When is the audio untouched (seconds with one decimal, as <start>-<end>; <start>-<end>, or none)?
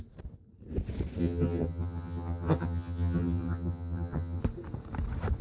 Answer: 0.0-1.2; 4.4-5.4